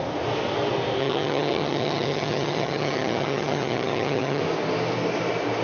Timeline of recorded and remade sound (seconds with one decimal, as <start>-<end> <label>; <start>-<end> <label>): 0.0-1.0 recorded; 1.0-4.4 remade; 4.4-5.6 recorded